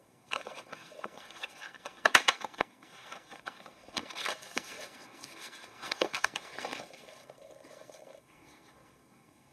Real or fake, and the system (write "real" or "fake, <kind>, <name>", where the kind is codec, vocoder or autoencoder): fake, codec, SNAC